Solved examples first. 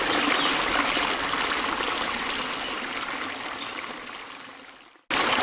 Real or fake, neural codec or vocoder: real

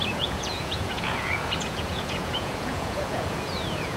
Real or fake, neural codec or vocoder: fake, vocoder, Vocos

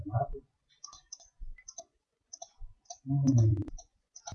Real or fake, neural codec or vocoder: fake, vocoder, Vocos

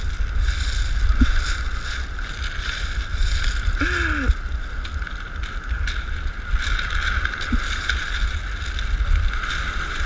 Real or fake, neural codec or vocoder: real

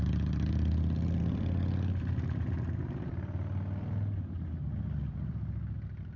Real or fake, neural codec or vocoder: real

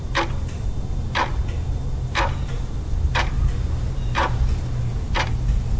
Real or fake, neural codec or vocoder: real